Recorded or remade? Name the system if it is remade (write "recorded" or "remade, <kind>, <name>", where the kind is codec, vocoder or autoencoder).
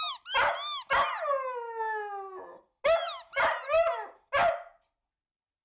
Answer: recorded